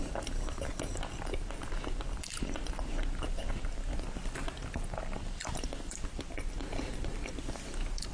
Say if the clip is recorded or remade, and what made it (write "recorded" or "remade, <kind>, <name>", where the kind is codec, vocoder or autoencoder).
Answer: recorded